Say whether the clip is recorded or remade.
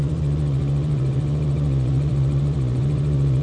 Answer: remade